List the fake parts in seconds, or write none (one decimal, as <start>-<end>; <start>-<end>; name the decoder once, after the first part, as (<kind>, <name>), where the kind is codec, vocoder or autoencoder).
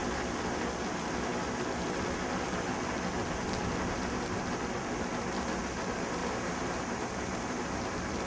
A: 6.2-7.8 (vocoder, BigVGAN v2)